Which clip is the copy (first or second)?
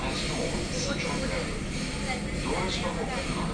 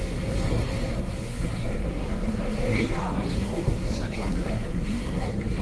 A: second